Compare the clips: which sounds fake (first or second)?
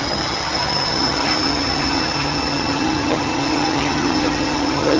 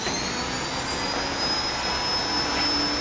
first